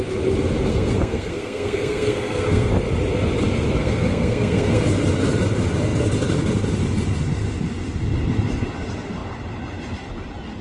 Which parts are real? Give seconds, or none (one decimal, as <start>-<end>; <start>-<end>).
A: 0.0-0.7; 2.7-3.8; 4.8-10.6